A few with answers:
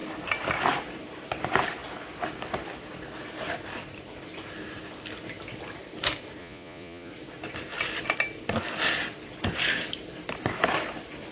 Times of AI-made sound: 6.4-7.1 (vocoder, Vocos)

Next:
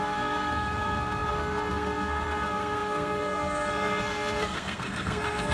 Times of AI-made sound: 0.0-5.5 (codec, SNAC)

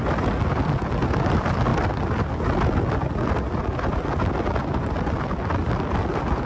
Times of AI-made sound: none

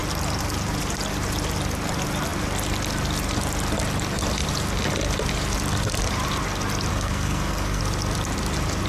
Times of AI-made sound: 6.9-7.8 (codec, SNAC)

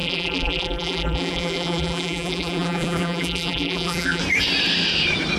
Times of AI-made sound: 0.0-4.2 (vocoder, BigVGAN v2)

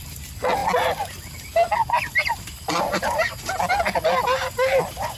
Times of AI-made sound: 1.8-3.7 (vocoder, BigVGAN v2); 4.2-5.2

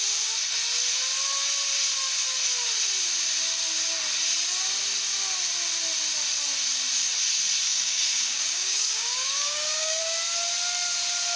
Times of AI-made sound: 7.7-10.0 (codec, DAC)